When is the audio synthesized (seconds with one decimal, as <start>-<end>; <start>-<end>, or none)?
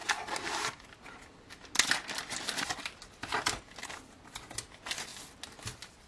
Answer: none